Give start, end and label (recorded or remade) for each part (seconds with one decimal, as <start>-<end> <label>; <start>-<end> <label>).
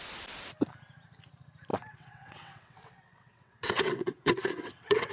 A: 0.0-1.7 recorded; 1.7-5.1 remade